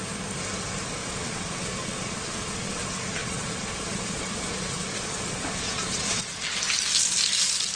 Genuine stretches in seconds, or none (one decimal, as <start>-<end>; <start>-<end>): 0.0-1.0; 2.8-3.2; 6.4-7.8